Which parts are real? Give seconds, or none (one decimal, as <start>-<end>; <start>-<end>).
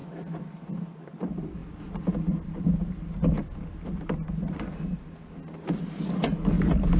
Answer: 0.0-7.0